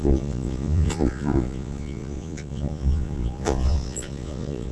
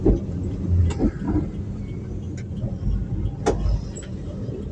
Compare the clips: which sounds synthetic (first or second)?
first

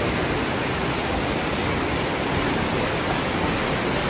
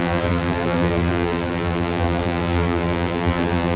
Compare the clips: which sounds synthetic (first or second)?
second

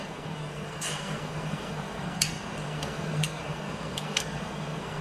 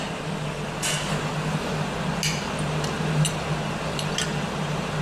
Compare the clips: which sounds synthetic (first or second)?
first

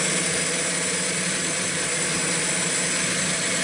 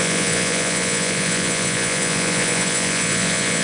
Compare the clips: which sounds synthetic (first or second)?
second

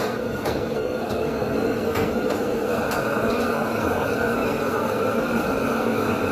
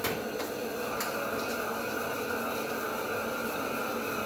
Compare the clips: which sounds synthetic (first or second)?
first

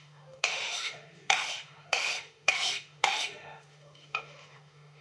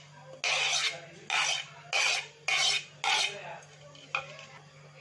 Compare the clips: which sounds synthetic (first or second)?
first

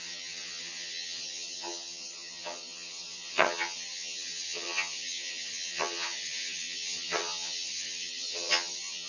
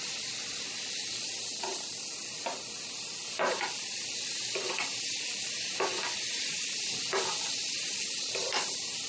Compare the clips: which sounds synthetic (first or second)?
first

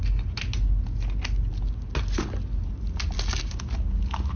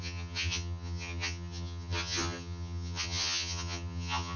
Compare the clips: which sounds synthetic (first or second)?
second